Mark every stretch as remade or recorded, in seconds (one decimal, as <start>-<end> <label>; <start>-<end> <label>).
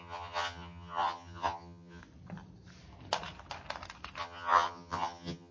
0.0-2.0 remade; 2.0-4.2 recorded; 4.2-5.5 remade